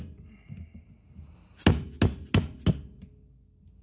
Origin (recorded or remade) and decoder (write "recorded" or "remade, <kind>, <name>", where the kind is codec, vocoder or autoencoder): recorded